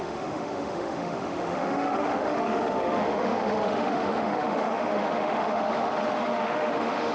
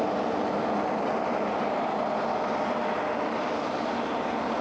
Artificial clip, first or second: first